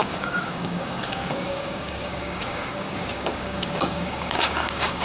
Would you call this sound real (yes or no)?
no